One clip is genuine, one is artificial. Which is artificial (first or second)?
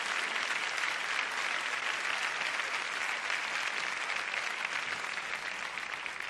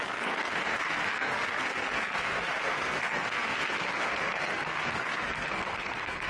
second